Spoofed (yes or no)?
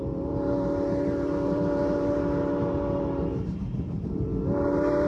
yes